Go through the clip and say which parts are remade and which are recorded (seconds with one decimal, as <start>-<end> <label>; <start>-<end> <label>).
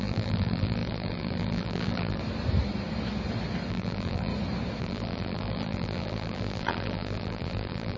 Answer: 0.0-2.2 remade; 2.2-3.7 recorded; 3.7-4.3 remade; 4.3-4.8 recorded; 4.8-8.0 remade